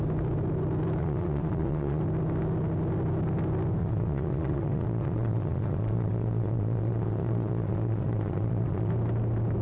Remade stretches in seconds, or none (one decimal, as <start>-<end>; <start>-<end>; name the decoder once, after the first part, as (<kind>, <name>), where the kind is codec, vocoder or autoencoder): 1.0-2.0 (vocoder, Vocos); 3.8-8.9